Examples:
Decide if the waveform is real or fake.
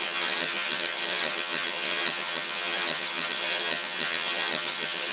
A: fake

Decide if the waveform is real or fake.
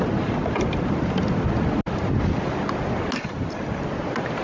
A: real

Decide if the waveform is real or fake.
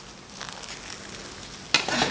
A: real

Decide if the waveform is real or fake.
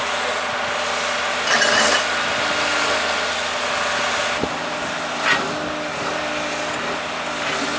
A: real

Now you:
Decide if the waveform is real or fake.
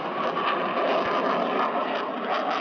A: real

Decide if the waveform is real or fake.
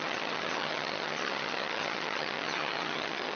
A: fake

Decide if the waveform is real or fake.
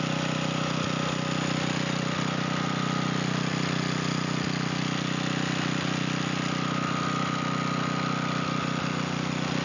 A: real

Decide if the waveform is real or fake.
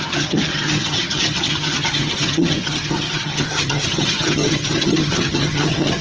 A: fake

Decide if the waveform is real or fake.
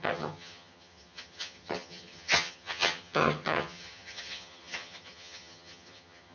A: fake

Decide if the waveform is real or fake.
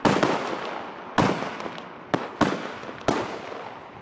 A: real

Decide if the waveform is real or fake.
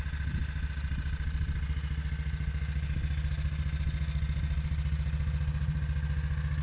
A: real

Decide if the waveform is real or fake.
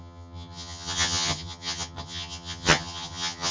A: fake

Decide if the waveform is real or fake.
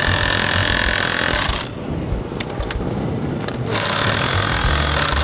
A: real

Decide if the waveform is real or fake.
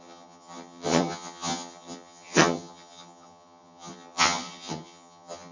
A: fake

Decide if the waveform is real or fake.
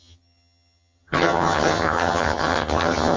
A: fake